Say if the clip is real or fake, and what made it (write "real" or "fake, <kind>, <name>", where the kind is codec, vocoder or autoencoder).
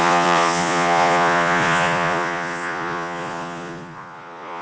fake, vocoder, Vocos